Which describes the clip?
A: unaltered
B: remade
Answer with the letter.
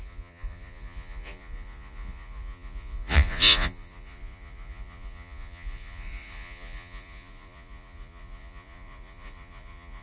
B